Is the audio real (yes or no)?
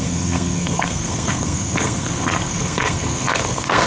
no